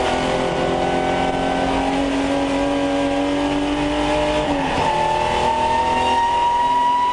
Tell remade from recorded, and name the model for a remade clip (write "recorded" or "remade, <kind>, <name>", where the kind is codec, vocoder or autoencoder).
recorded